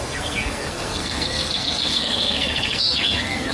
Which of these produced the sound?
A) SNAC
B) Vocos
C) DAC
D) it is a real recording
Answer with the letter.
A